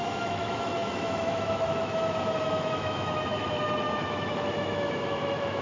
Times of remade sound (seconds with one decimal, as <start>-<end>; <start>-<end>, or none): 0.0-5.6